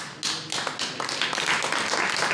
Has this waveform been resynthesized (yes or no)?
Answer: no